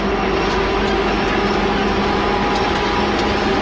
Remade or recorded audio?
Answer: recorded